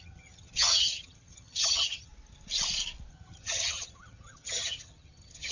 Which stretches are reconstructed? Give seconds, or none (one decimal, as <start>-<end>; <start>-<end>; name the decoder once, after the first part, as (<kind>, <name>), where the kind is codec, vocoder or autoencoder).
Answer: 0.0-2.1 (vocoder, HiFi-GAN); 3.1-5.5